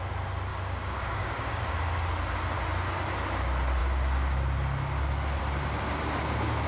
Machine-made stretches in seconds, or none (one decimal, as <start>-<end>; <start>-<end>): 0.5-1.6